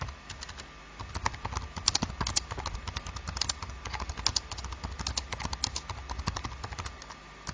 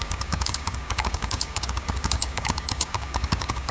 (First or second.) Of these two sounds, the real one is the first